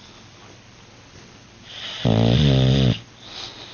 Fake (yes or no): no